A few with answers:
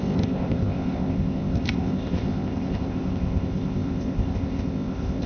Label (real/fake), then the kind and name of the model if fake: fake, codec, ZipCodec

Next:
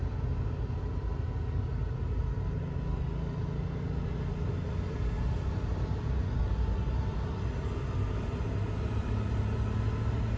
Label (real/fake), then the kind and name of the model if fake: real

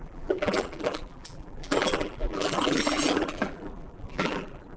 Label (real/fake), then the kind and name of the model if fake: fake, vocoder, BigVGAN v2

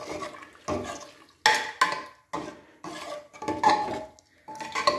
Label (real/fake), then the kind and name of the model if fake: real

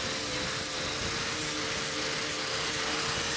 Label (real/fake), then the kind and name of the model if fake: real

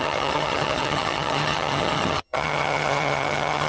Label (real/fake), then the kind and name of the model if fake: fake, vocoder, HiFi-GAN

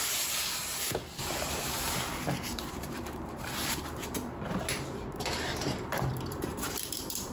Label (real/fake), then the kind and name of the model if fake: fake, vocoder, BigVGAN v2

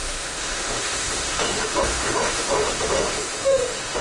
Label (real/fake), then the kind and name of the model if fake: fake, autoencoder, DAC-VAE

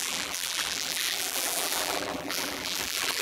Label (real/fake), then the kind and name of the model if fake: fake, vocoder, BigVGAN v2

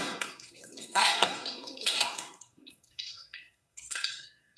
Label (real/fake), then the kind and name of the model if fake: fake, codec, SNAC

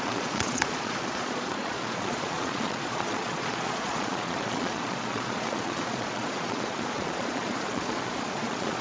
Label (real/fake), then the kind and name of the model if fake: fake, vocoder, Vocos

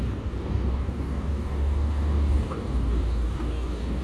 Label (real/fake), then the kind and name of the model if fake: fake, codec, DAC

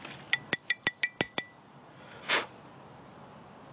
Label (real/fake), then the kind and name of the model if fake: real